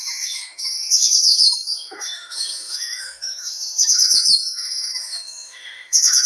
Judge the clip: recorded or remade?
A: remade